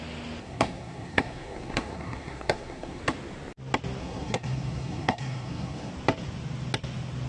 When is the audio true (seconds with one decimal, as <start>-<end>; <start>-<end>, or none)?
0.0-0.4; 3.0-4.0; 5.9-7.3